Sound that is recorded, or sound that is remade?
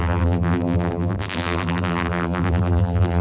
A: remade